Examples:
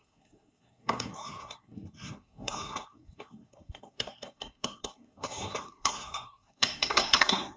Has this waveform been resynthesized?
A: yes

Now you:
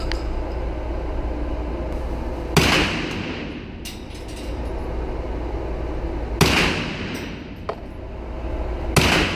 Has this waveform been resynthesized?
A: no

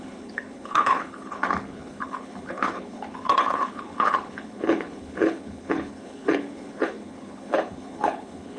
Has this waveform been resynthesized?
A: yes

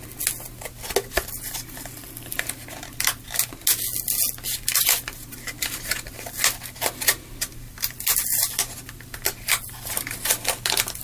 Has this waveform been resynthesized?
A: no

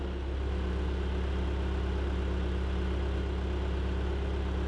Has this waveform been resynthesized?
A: no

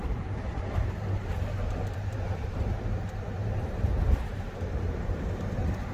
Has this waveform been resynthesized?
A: yes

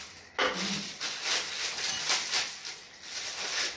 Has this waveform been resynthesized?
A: no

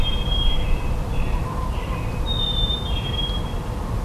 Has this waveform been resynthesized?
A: no